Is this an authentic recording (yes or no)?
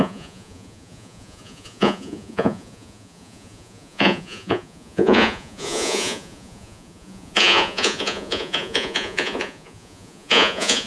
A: no